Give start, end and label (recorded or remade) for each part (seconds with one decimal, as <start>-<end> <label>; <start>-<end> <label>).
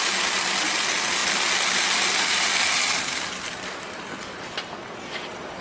0.0-5.6 recorded